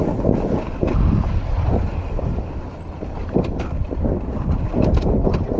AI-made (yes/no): yes